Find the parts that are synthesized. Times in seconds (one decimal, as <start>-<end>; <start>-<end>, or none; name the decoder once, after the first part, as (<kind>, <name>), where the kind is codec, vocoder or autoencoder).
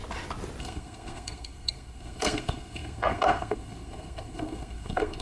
0.6-5.2 (codec, SNAC)